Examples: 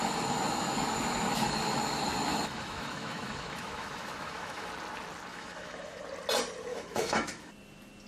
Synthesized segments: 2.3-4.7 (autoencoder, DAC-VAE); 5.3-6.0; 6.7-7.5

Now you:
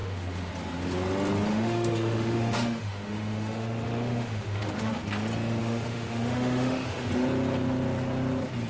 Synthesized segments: 0.0-0.5 (autoencoder, DAC-VAE); 1.5-4.9; 5.6-7.1

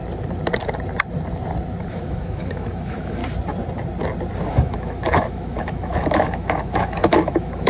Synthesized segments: 1.9-3.2 (autoencoder, DAC-VAE); 4.5-7.7